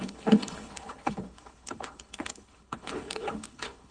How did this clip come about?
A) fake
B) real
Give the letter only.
A